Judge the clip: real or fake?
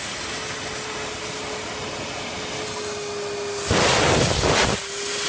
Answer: real